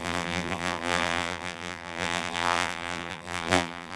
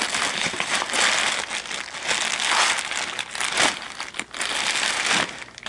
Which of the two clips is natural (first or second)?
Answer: second